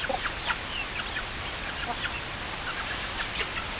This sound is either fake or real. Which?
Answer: real